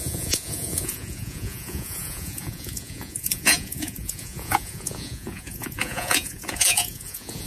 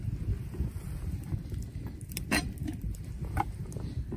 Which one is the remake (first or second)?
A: first